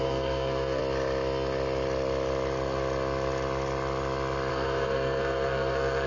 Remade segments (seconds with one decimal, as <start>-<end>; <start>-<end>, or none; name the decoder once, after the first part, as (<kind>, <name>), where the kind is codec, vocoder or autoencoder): 0.0-0.8 (codec, SNAC); 4.5-6.1